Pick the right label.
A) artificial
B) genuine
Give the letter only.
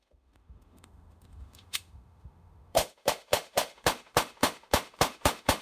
A